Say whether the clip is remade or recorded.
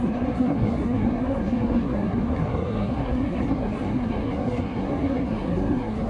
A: remade